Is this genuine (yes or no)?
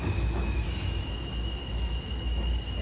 no